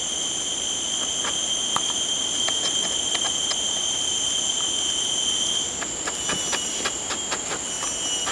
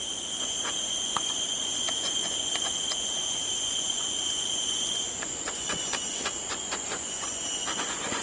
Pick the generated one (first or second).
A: second